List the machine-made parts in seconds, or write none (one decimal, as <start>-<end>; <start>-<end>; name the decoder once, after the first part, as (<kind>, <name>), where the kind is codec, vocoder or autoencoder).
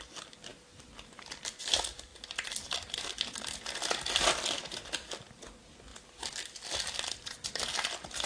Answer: none